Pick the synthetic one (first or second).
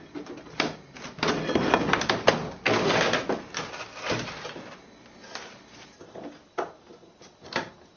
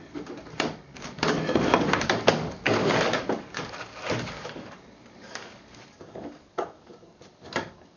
second